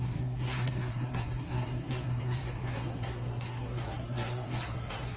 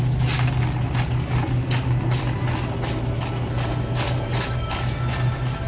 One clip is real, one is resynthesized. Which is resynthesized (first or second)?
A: first